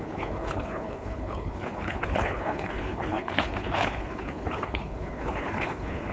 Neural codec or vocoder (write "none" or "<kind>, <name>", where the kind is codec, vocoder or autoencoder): codec, HILCodec